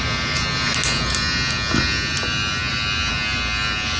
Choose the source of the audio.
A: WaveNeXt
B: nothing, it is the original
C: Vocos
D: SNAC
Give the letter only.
B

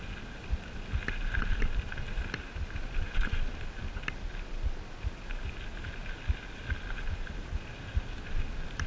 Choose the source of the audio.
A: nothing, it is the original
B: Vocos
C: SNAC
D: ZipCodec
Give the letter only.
A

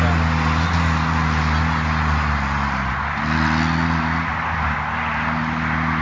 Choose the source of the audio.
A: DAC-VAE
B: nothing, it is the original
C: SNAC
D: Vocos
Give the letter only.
B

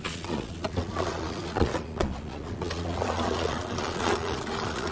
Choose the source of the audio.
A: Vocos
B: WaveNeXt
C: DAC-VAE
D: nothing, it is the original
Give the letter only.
A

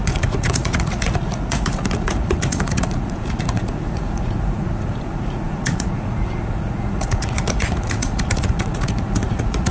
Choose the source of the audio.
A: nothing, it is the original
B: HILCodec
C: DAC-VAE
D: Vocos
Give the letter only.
D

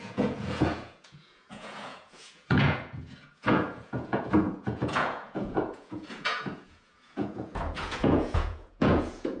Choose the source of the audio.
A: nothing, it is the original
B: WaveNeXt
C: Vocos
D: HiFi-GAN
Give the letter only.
C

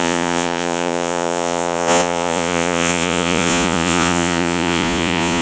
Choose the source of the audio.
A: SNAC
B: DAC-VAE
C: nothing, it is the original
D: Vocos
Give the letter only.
D